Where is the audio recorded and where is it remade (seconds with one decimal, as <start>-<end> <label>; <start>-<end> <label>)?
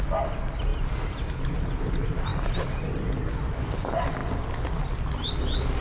0.0-5.8 recorded